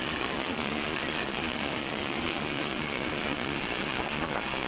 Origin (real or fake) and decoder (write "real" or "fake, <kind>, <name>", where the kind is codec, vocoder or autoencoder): fake, vocoder, Vocos